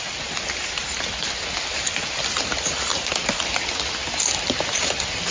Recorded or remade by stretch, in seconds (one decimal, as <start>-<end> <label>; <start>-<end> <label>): 0.0-5.3 recorded